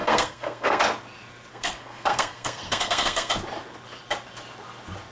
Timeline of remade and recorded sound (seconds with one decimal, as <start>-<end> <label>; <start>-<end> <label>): 0.0-0.8 remade; 0.8-1.5 recorded; 1.5-3.3 remade; 3.3-5.1 recorded